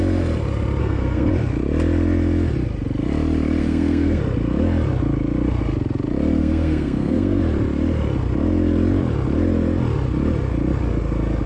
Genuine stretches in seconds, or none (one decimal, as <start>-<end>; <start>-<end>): 0.0-0.8; 1.3-3.6; 4.2-6.4; 7.4-11.5